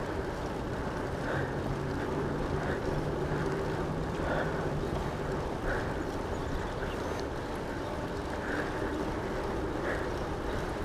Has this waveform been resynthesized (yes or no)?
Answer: yes